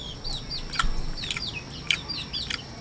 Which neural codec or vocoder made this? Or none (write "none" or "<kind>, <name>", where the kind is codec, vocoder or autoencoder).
none